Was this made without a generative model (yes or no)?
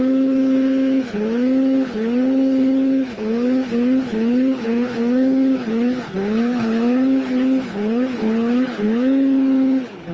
no